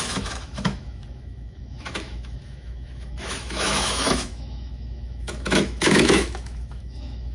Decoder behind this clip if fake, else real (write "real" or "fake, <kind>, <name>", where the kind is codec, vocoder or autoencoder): fake, autoencoder, DAC-VAE